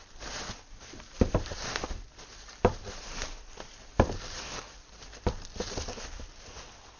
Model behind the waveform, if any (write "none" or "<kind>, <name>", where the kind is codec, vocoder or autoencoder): vocoder, BigVGAN v2